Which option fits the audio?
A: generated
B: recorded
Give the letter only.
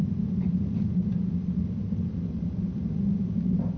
B